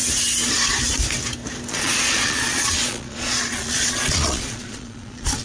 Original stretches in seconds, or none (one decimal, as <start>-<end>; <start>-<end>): 0.0-1.7